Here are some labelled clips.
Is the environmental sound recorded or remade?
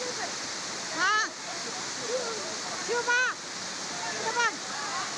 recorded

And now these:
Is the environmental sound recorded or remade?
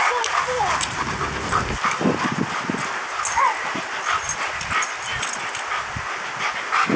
recorded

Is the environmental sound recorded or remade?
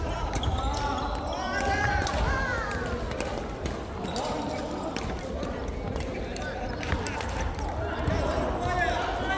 recorded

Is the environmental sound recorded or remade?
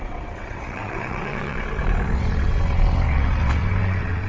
remade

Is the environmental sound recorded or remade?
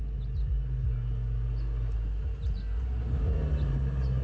recorded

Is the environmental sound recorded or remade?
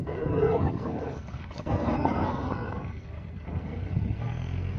remade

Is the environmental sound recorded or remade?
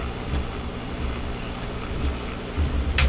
recorded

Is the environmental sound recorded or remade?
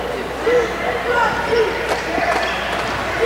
recorded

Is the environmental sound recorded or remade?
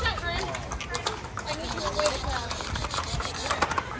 recorded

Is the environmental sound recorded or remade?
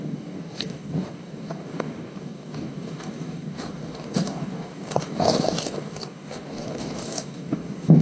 remade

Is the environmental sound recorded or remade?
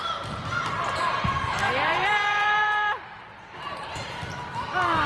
remade